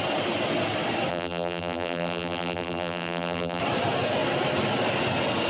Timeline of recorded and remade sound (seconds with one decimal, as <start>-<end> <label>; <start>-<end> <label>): 0.0-1.1 recorded; 1.1-3.6 remade; 3.6-5.5 recorded